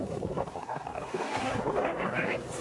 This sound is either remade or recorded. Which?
remade